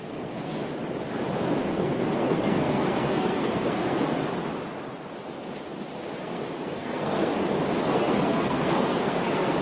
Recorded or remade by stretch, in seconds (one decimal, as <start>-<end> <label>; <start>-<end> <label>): 0.0-0.6 remade; 0.6-1.7 recorded; 1.7-4.2 remade; 4.2-6.2 recorded; 6.2-7.3 remade; 7.3-7.8 recorded; 7.8-9.6 remade